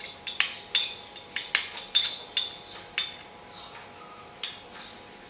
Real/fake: real